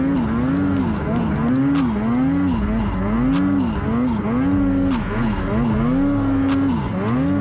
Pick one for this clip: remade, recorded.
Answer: recorded